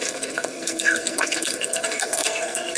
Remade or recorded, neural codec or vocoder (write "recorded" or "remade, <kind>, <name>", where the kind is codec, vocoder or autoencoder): remade, codec, SNAC